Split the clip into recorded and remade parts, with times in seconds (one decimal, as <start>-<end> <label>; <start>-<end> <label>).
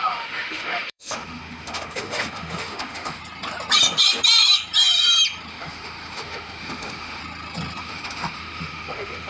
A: 0.0-3.2 remade; 3.2-5.5 recorded; 5.5-7.2 remade; 7.2-7.8 recorded; 7.8-9.3 remade